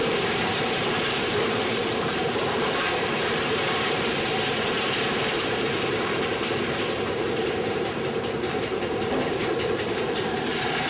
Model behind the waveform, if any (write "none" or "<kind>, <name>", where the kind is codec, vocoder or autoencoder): vocoder, BigVGAN v2